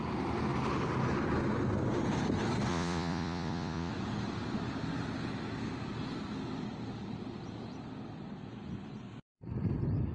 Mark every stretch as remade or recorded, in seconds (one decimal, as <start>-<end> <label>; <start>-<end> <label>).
0.0-2.7 recorded; 2.7-3.9 remade; 3.9-10.1 recorded